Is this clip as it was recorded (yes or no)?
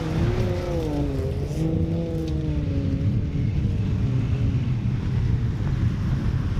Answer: yes